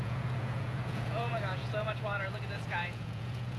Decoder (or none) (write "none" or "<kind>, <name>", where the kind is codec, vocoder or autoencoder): vocoder, Vocos